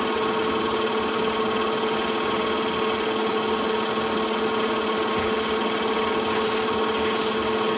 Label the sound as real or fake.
real